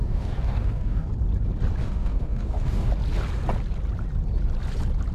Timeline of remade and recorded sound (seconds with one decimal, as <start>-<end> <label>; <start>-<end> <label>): 0.0-1.1 remade; 1.1-1.8 recorded; 1.8-2.9 remade; 2.9-5.1 recorded